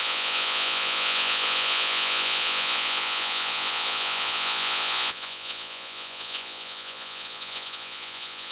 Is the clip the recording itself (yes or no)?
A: no